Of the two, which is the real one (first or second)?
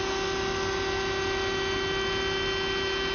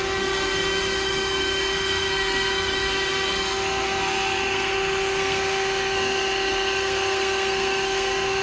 first